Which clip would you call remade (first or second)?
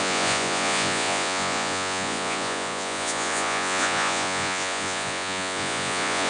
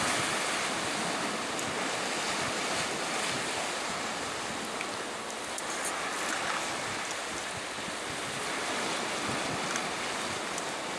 first